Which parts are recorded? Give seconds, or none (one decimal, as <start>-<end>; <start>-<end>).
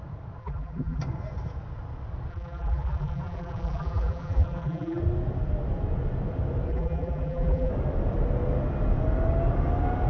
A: 0.0-0.4; 1.0-2.3; 5.0-6.7; 7.7-10.1